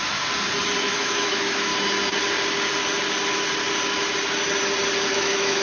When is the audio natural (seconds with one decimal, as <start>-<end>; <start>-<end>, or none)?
0.0-0.8; 1.7-5.1